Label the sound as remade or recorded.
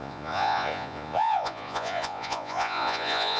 remade